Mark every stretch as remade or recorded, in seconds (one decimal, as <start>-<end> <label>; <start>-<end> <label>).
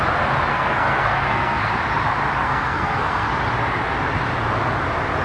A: 0.0-0.5 recorded; 0.5-1.7 remade; 1.7-2.4 recorded; 2.4-3.3 remade; 3.3-5.2 recorded